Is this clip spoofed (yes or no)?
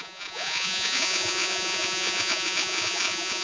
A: yes